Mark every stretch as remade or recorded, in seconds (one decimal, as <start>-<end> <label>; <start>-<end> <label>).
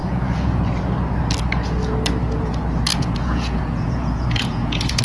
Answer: 0.0-0.6 remade; 0.6-2.9 recorded; 2.9-5.0 remade